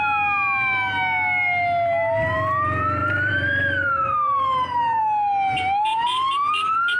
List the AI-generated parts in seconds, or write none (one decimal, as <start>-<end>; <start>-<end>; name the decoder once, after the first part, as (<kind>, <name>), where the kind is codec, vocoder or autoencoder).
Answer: 3.0-5.0 (vocoder, BigVGAN v2); 5.9-6.5